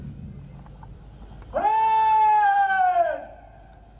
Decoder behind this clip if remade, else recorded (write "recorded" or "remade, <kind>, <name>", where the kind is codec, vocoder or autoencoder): recorded